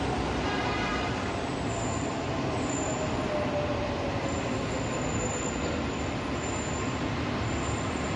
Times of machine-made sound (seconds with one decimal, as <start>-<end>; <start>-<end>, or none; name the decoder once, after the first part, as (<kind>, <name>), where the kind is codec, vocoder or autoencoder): none